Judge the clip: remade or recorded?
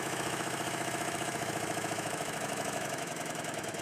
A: remade